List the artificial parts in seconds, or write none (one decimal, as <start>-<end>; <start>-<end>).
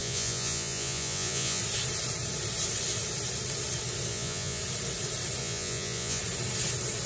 0.0-1.6; 4.1-4.6; 5.4-6.2